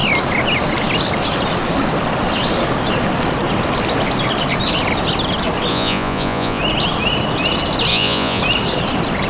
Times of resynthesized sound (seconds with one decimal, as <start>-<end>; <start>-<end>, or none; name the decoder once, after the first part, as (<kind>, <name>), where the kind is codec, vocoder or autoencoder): 5.7-6.6 (vocoder, Vocos); 7.9-8.4